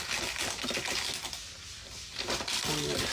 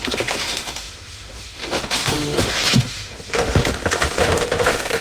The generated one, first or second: second